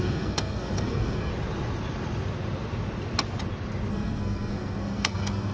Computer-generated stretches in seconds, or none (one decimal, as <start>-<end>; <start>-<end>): 0.0-1.3; 3.9-5.5